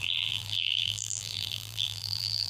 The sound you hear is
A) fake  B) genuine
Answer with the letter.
A